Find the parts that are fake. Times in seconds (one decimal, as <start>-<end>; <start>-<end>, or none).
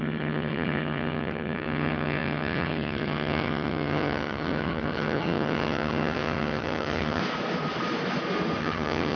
0.0-7.2; 8.6-9.2